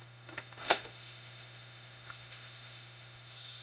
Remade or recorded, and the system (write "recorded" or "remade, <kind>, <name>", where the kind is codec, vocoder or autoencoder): remade, autoencoder, DAC-VAE